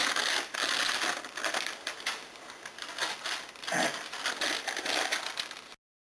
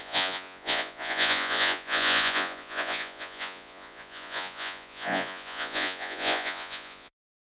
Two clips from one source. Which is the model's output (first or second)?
second